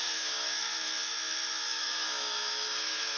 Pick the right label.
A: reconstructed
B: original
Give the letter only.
A